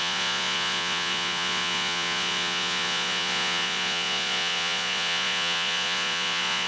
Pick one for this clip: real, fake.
fake